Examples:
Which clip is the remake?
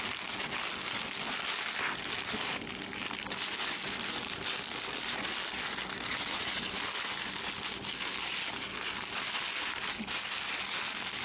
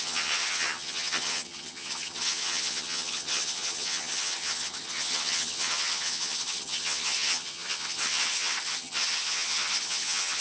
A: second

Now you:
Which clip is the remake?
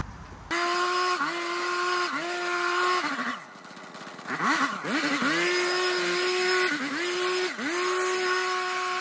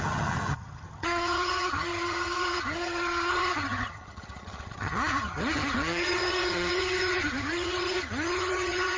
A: second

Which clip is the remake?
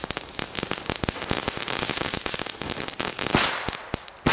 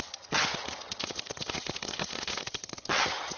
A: second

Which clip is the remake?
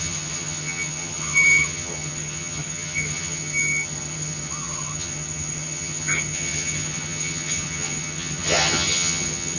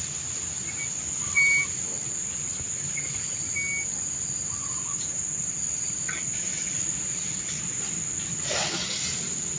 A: first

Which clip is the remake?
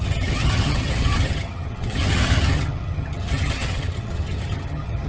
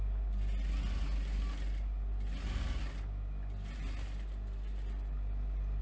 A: first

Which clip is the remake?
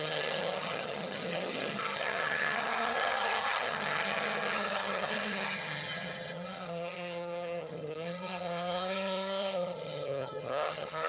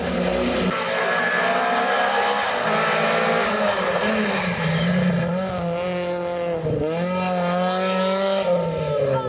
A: first